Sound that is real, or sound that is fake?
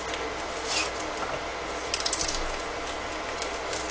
real